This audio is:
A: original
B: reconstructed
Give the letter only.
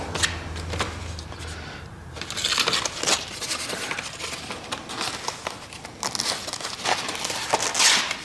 A